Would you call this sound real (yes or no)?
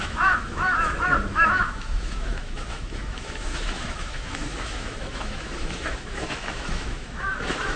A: no